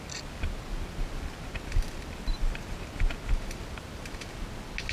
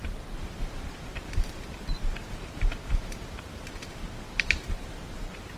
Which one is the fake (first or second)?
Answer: second